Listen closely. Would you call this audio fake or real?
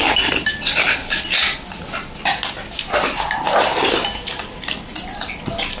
real